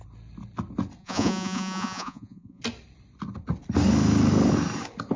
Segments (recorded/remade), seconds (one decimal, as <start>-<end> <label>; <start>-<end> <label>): 0.0-1.0 recorded; 1.0-2.6 remade; 2.6-5.2 recorded